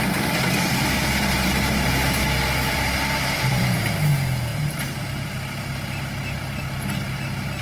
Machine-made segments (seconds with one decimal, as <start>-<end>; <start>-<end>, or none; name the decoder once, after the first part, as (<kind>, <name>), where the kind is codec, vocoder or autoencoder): 2.6-3.9 (vocoder, BigVGAN v2); 4.5-5.6